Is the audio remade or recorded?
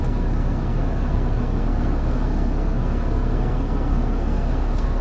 remade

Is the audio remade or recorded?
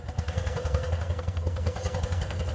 remade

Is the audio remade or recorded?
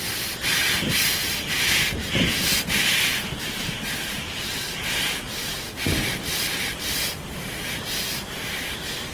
recorded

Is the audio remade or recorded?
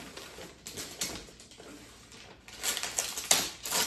recorded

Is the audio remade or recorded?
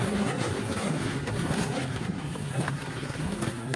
remade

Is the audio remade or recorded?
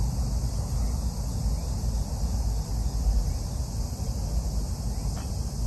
recorded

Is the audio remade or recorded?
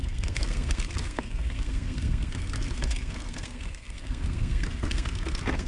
remade